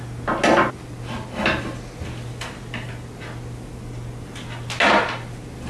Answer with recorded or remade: recorded